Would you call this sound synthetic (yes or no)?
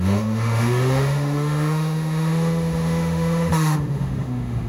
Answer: yes